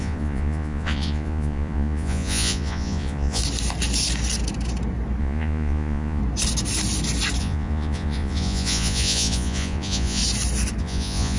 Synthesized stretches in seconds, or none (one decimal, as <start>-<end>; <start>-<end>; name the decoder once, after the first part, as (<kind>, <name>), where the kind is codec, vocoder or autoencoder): 0.0-3.4 (vocoder, Vocos); 5.2-6.2; 7.4-10.2; 10.8-11.4